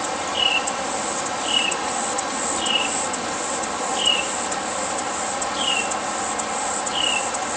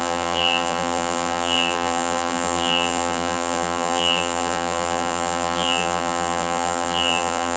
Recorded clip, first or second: first